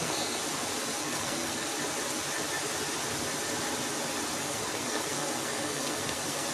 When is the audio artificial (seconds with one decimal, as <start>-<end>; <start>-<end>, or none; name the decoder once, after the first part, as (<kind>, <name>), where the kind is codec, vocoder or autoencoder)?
0.0-0.4 (codec, SNAC); 1.0-1.7; 4.4-6.5